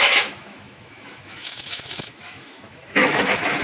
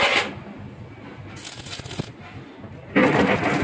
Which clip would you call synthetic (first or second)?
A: first